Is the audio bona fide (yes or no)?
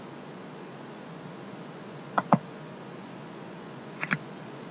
no